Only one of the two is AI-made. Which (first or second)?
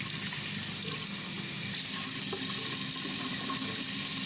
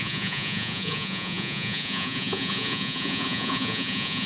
second